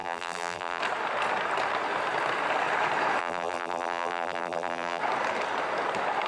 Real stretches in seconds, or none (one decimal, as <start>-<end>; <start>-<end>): 0.8-3.2; 5.0-6.3